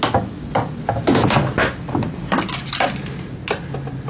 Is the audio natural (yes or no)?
yes